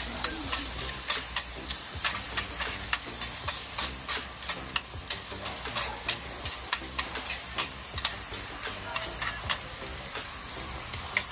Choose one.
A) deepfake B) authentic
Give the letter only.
B